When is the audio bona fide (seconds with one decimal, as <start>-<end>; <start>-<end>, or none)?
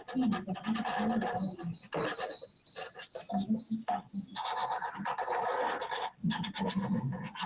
0.0-7.5